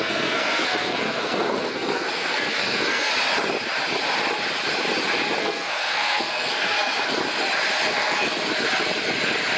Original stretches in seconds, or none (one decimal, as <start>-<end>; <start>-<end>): 3.1-5.4; 7.2-7.9; 8.3-9.6